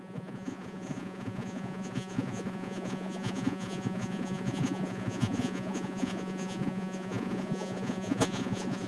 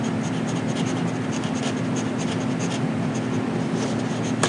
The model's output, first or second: first